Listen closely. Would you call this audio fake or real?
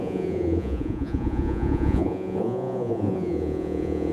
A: fake